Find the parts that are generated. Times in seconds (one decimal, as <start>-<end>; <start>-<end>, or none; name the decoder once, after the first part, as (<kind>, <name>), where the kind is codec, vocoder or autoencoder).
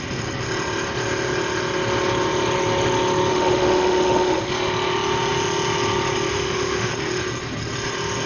3.3-4.5 (autoencoder, DAC-VAE); 6.3-6.9